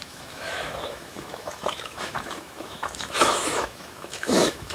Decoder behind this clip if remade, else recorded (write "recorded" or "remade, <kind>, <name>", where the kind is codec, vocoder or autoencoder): remade, autoencoder, DAC-VAE